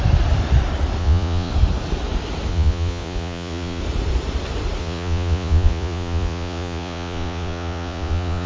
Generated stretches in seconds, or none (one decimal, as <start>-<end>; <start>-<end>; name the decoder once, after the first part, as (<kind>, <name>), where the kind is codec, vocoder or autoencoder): 1.0-1.5 (vocoder, Vocos); 2.5-3.8; 4.8-8.5